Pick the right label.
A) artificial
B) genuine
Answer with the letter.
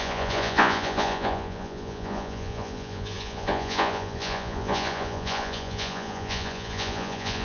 A